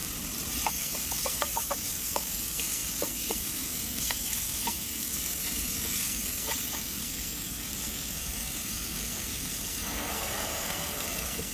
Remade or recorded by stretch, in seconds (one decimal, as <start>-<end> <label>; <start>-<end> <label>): 0.0-0.7 recorded; 0.7-11.5 remade